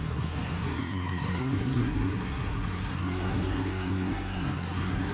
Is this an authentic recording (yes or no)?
no